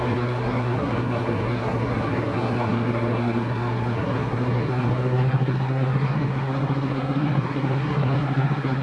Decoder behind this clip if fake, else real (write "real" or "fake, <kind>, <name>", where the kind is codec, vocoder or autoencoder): fake, codec, SNAC